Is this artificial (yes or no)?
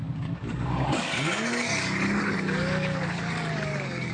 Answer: yes